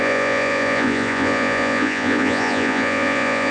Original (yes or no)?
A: no